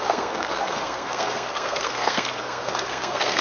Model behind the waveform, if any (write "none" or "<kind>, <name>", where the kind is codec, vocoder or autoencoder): codec, SNAC